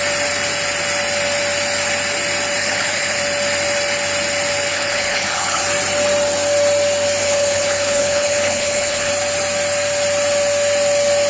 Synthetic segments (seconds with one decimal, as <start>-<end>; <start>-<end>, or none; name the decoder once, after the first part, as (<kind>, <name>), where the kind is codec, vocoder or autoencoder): 2.6-3.2 (codec, HILCodec); 4.7-5.6; 7.2-9.1